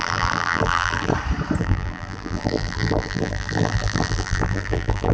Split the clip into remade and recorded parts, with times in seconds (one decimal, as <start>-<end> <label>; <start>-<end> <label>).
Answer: 0.0-1.1 remade; 1.1-1.6 recorded; 1.6-5.1 remade